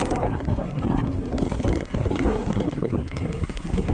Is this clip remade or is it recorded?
remade